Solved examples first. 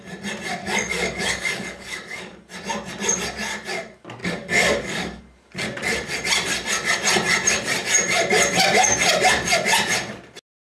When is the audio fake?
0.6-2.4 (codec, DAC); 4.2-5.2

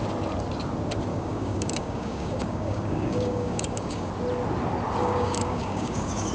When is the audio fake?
1.1-4.1 (codec, DAC); 5.0-6.3